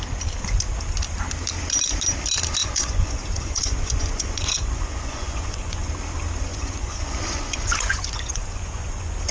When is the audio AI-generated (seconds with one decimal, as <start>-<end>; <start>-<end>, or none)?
2.6-5.9; 6.5-9.3